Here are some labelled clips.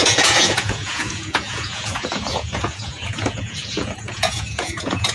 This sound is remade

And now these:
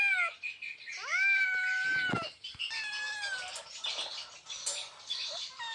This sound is recorded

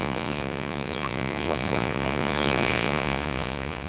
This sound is remade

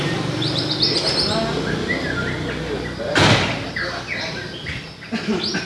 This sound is recorded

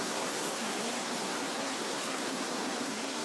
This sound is remade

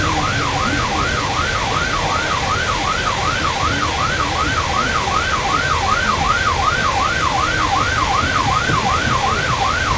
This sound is recorded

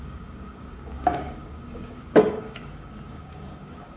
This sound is remade